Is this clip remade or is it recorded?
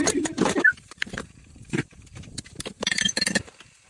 remade